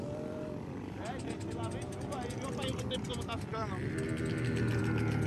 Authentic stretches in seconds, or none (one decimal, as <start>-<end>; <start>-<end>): 0.0-5.3